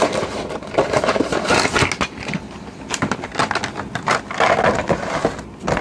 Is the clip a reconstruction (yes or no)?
no